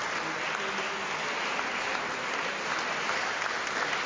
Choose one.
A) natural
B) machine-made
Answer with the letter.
A